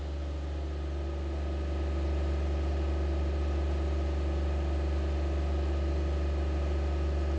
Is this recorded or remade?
recorded